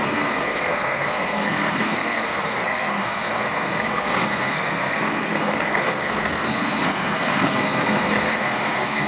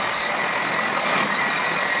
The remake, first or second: first